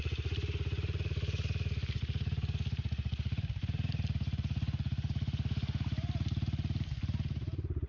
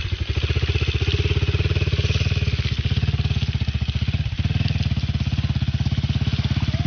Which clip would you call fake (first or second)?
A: first